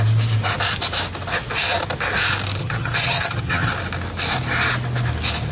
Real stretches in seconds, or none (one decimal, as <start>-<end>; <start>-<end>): 0.0-2.6; 3.7-5.5